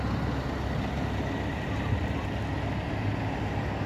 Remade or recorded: recorded